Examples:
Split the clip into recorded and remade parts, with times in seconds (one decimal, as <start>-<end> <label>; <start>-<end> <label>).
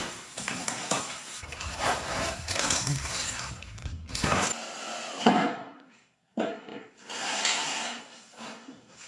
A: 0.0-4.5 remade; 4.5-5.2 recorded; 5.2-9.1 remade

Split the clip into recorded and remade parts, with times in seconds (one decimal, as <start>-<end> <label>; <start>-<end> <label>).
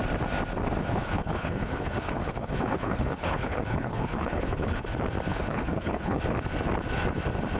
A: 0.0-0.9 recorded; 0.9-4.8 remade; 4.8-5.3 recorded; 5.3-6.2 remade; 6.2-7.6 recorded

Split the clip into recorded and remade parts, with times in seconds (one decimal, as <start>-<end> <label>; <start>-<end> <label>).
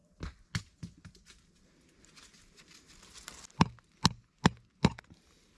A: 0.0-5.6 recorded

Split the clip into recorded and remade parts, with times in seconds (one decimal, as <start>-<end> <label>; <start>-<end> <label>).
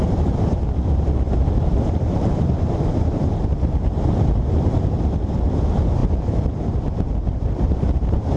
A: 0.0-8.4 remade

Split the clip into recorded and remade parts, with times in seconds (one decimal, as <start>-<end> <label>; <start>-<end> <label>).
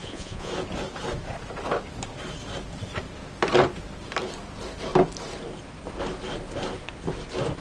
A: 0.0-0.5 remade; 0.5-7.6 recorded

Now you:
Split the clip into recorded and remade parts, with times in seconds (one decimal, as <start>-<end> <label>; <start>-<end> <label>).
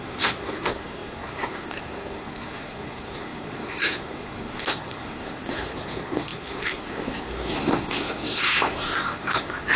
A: 0.0-9.8 remade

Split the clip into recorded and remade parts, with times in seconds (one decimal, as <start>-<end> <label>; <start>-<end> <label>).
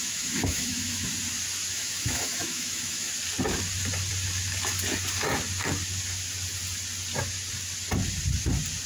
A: 0.0-1.1 remade; 1.1-1.7 recorded; 1.7-3.1 remade; 3.1-8.9 recorded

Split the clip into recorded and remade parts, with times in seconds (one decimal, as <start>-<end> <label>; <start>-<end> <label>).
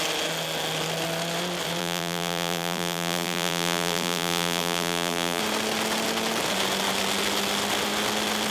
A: 0.0-1.8 recorded; 1.8-5.4 remade; 5.4-8.5 recorded